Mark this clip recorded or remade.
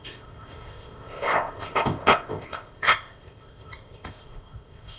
remade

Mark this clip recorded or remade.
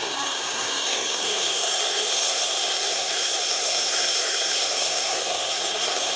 remade